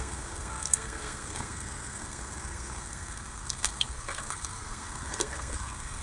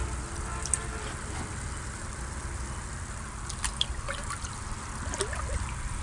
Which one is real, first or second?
second